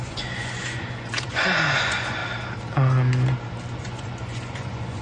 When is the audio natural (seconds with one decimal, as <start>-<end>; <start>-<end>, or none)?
2.2-3.7